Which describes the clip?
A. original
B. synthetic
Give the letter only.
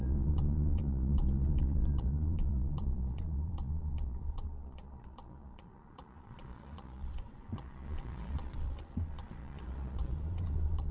B